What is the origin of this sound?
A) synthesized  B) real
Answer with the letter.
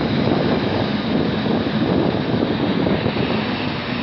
B